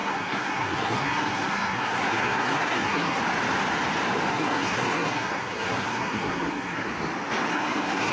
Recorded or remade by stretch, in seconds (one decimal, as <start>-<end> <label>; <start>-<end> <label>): 0.0-3.2 remade; 3.2-4.3 recorded; 4.3-6.9 remade; 6.9-7.5 recorded; 7.5-8.1 remade